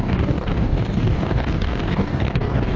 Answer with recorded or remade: remade